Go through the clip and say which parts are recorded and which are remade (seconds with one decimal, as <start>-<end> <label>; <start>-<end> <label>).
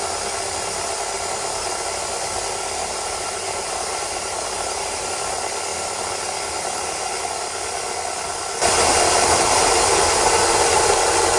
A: 0.0-2.8 recorded; 2.8-5.1 remade; 5.1-11.4 recorded